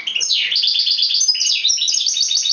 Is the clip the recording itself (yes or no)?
yes